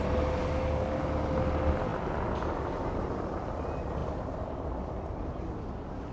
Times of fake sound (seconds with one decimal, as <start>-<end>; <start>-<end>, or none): 4.0-4.8